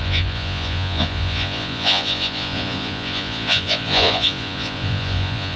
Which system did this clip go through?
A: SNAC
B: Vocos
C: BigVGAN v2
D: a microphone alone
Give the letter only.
B